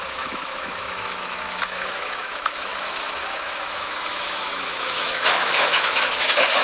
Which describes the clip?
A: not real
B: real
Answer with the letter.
A